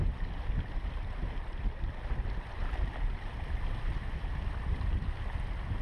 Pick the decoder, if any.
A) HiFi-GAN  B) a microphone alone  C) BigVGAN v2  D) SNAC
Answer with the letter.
B